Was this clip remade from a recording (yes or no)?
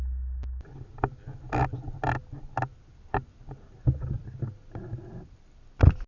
no